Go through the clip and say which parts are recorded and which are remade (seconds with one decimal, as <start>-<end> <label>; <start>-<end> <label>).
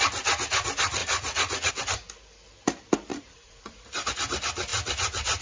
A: 0.0-1.0 recorded; 1.0-1.7 remade; 1.7-3.1 recorded; 3.1-4.1 remade; 4.1-5.4 recorded